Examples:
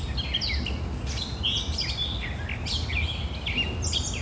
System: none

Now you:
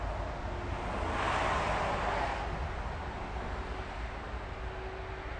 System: none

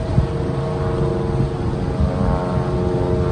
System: none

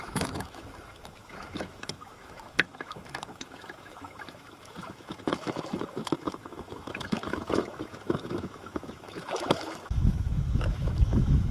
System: autoencoder, DAC-VAE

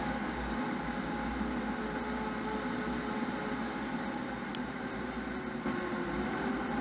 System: none